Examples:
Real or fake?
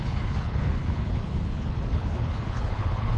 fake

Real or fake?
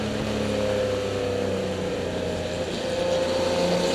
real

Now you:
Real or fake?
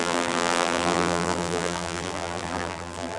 fake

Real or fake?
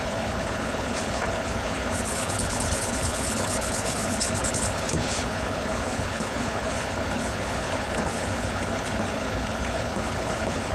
fake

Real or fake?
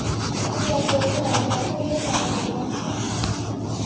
real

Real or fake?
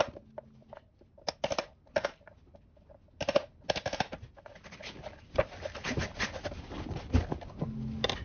real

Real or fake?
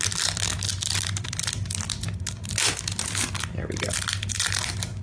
real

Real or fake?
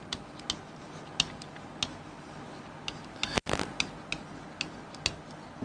real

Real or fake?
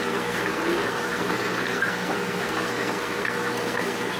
fake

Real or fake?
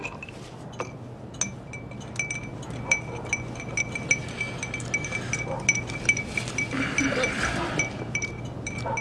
real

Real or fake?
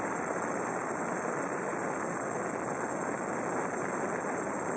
real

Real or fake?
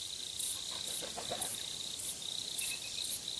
real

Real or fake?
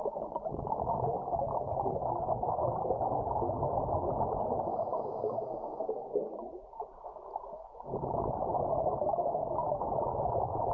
real